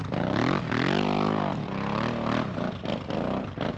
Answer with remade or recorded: recorded